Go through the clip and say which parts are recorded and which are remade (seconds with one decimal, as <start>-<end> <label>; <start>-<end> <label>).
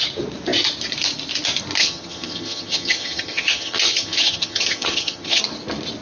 0.0-1.8 recorded; 1.8-5.4 remade; 5.4-6.0 recorded